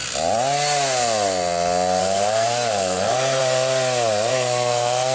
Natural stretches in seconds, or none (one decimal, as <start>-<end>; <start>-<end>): 0.0-2.0; 3.4-4.3